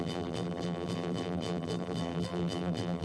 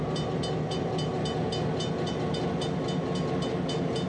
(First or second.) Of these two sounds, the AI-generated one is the first